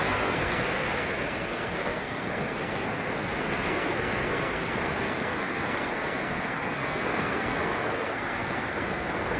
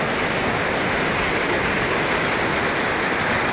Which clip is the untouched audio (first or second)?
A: second